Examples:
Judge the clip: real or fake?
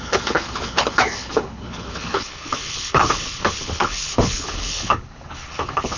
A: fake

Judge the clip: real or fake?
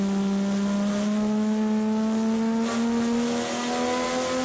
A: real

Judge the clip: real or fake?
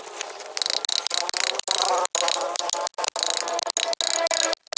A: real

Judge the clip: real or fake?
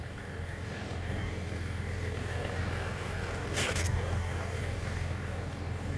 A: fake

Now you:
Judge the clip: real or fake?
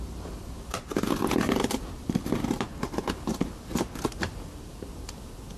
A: real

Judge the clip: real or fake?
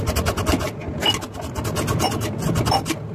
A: real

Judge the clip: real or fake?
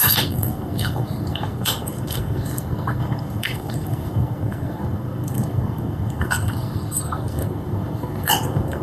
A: fake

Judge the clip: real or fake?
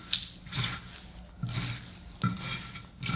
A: real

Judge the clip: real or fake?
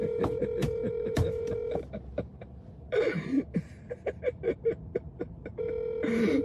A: fake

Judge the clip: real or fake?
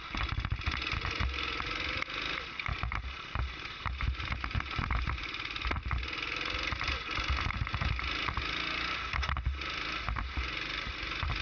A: real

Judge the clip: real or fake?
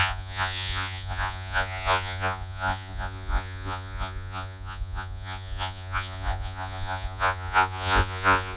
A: fake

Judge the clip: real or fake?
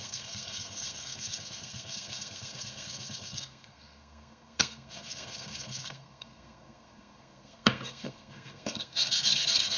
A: fake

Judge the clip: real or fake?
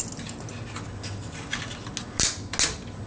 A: real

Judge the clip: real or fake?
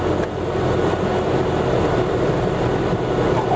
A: real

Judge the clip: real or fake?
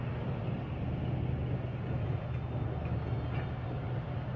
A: real